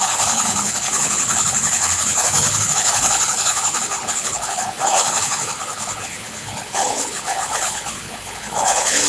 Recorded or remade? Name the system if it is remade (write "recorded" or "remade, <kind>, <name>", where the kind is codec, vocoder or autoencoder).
remade, codec, HILCodec